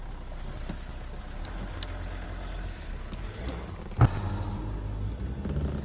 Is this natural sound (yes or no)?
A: yes